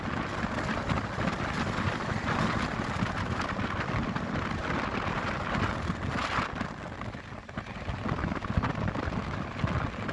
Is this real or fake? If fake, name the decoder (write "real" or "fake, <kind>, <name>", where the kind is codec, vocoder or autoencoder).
real